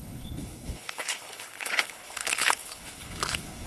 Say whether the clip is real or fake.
fake